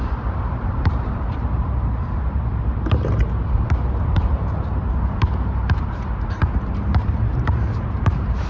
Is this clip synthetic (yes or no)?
yes